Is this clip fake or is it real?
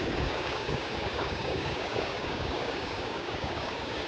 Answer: fake